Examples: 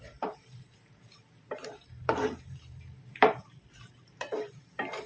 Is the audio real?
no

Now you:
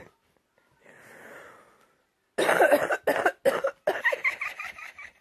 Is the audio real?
yes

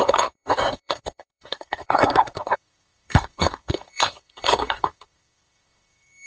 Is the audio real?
no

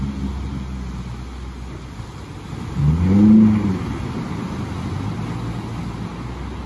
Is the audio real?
yes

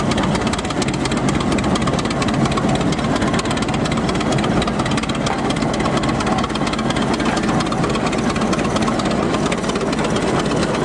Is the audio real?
yes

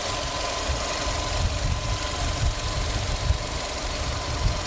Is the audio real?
yes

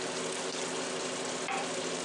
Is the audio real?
yes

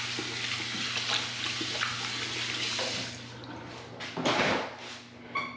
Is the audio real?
yes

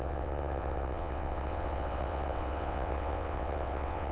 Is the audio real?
no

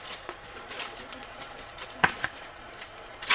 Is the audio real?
no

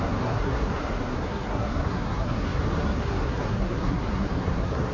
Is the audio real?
no